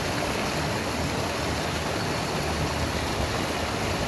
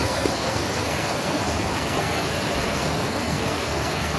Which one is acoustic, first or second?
first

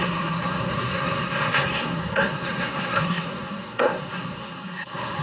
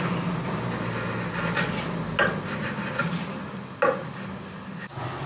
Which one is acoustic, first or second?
second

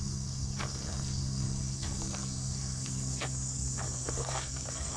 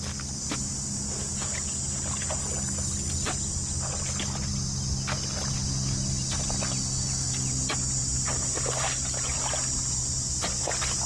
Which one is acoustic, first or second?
second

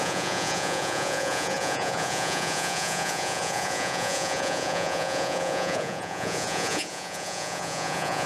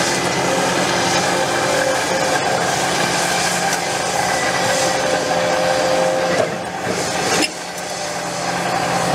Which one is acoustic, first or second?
second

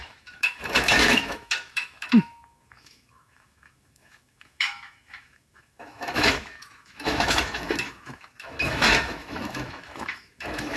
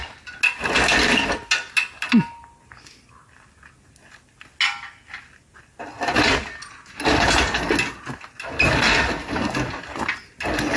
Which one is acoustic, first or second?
second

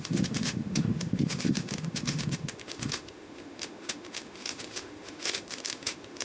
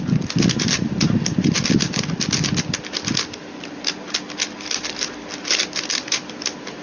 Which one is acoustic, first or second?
second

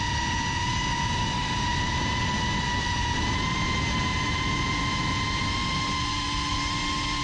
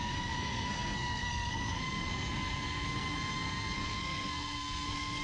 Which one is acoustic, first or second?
first